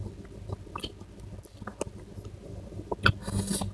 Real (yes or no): yes